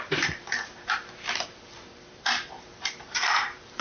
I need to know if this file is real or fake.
fake